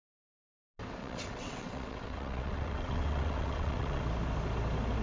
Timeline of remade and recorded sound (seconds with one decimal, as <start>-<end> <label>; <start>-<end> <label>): 0.0-1.0 recorded; 1.0-4.0 remade; 4.0-5.0 recorded